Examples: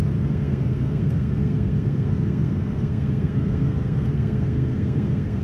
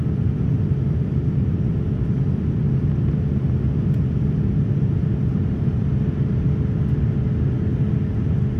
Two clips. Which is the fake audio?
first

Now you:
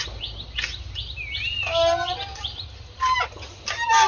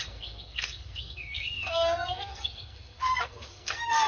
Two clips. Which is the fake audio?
second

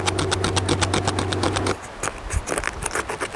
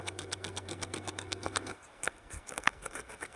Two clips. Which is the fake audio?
second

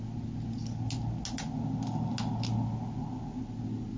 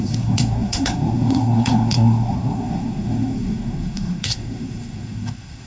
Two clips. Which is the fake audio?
second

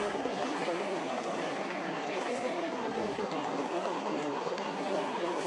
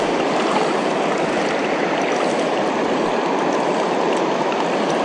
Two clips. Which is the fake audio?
first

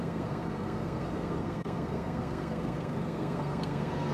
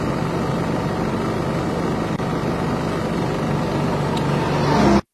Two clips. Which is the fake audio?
first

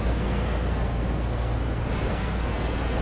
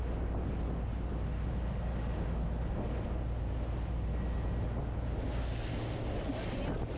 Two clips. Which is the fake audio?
first